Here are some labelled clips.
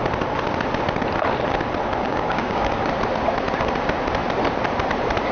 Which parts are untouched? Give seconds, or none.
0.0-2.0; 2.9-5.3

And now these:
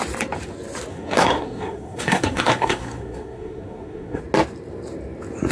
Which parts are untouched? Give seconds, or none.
0.0-0.9; 4.2-5.5

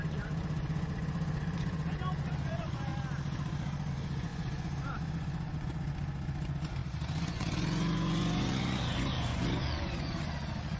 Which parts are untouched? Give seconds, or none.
2.9-3.9

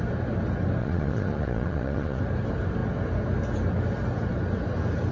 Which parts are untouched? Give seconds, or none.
0.0-0.8; 2.2-5.1

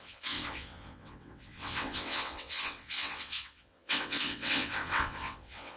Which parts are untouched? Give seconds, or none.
none

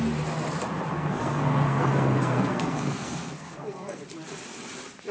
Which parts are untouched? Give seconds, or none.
0.0-0.9; 4.0-5.1